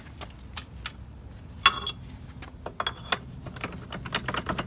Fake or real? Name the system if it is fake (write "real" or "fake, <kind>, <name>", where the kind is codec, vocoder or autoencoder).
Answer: real